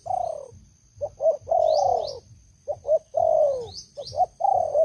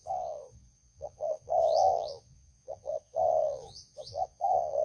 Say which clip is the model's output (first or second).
second